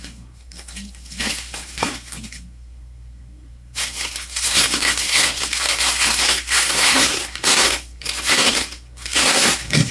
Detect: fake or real fake